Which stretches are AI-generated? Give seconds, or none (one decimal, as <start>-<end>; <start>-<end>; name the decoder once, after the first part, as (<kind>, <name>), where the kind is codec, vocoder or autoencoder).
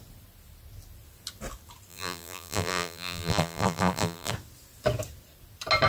1.9-4.3 (vocoder, BigVGAN v2)